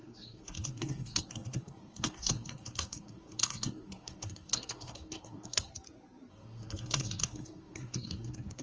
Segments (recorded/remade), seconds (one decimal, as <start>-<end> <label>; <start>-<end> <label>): 0.0-5.7 remade; 5.7-6.3 recorded; 6.3-8.6 remade